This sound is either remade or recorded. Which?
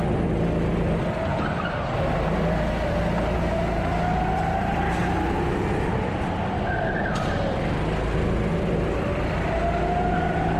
recorded